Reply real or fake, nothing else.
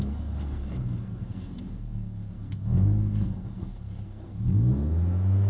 fake